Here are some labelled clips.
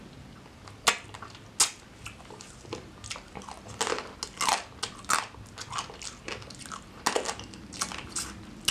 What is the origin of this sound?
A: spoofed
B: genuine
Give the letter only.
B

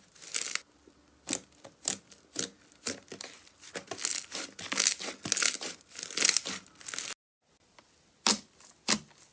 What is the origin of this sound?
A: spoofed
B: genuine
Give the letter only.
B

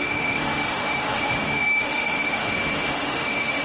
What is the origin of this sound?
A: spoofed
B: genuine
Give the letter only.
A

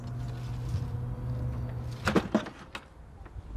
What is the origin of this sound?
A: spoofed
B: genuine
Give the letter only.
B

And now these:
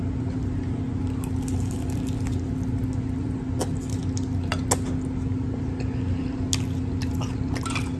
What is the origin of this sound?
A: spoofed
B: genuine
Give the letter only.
B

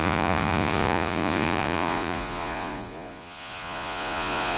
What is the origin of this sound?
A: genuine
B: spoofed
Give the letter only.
B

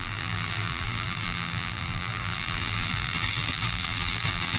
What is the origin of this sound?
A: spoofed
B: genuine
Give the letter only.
A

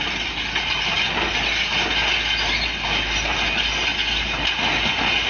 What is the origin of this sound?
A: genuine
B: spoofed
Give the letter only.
A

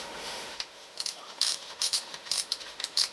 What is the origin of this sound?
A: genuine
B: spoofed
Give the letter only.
B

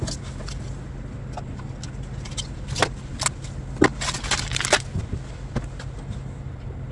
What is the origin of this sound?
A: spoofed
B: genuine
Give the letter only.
B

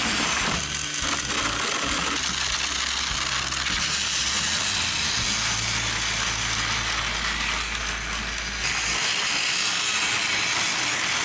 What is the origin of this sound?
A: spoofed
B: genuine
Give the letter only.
B